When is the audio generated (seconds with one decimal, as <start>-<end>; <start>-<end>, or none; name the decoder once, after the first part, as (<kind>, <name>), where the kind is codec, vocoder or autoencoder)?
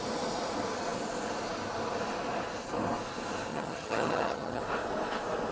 3.5-4.6 (vocoder, HiFi-GAN)